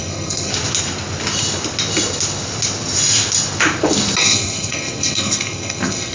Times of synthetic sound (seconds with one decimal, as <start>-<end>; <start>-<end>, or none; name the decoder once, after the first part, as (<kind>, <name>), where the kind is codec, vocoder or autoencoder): 0.0-0.5 (codec, SNAC); 4.2-6.1